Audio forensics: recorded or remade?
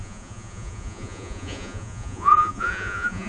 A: remade